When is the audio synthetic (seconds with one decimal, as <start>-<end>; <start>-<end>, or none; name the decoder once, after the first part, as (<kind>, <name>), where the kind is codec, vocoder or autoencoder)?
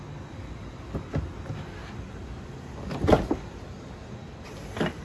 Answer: none